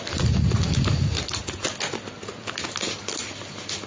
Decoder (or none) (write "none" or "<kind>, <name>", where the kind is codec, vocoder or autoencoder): none